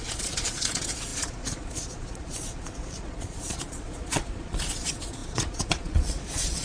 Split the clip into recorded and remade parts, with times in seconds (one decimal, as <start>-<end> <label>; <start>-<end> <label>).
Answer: 0.0-6.6 remade